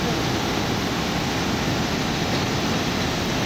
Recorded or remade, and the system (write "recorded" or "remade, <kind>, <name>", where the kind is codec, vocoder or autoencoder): recorded